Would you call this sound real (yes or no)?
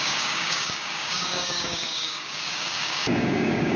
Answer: no